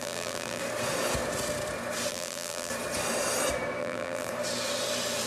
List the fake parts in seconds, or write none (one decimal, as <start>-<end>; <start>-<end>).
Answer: 0.0-0.6; 2.1-2.7; 3.8-4.3